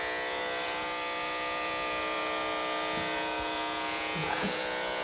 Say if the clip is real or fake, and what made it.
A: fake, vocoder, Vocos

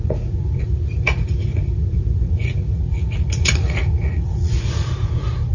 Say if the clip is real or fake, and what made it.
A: fake, vocoder, Vocos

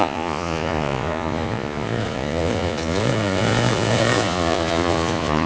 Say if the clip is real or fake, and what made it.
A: fake, vocoder, Vocos